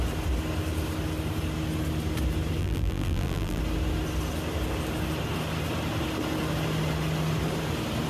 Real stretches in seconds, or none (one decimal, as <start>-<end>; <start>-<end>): 0.0-2.6; 3.6-8.1